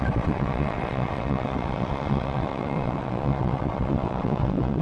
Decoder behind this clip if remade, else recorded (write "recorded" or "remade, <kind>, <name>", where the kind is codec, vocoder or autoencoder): remade, vocoder, WaveNeXt